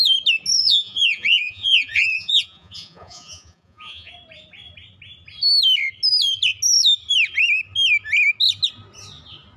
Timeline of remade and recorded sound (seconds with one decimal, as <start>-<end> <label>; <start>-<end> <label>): 0.0-0.7 recorded; 0.7-4.1 remade; 4.1-9.6 recorded